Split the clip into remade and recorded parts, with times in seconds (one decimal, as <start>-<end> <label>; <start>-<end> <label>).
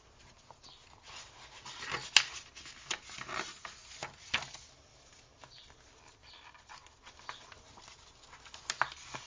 0.0-9.3 recorded